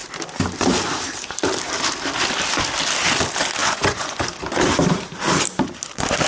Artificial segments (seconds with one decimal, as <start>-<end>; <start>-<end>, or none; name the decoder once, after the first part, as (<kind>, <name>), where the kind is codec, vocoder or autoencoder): 3.6-4.2 (vocoder, Vocos)